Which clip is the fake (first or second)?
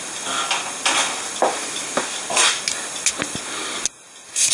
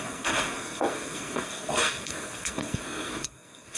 second